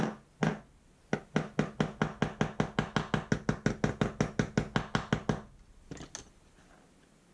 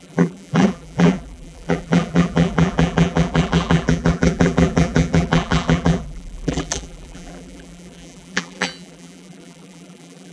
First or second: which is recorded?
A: first